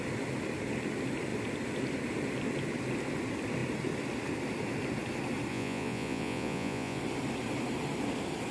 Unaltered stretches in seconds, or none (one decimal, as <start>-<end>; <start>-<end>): 0.0-5.5; 7.0-8.5